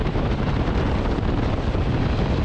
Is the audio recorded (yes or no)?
yes